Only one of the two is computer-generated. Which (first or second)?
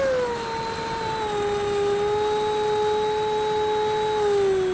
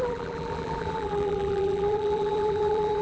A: second